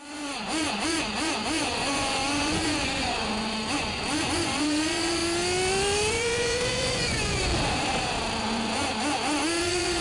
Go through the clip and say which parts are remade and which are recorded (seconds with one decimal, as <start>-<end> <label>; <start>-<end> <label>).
0.0-5.2 remade; 5.2-6.1 recorded; 6.1-7.5 remade; 7.5-8.4 recorded; 8.4-8.8 remade; 8.8-9.6 recorded; 9.6-10.0 remade